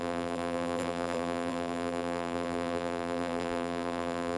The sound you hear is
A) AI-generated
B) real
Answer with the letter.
A